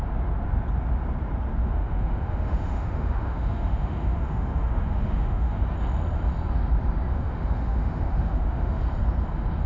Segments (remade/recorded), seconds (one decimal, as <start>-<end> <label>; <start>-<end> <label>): 0.0-1.6 recorded; 1.6-5.6 remade; 5.6-7.1 recorded; 7.1-8.8 remade; 8.8-9.7 recorded